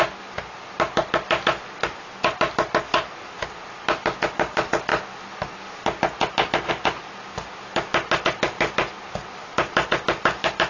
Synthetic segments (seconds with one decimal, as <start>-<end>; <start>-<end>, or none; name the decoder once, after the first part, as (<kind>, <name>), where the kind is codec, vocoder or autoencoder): none